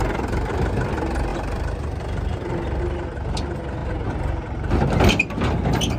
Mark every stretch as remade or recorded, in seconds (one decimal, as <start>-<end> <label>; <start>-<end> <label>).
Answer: 0.0-1.3 recorded; 1.3-2.8 remade; 2.8-6.0 recorded